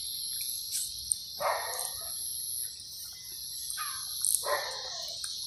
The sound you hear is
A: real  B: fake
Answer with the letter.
A